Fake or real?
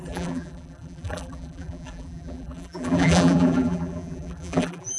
fake